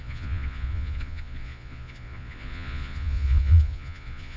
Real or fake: fake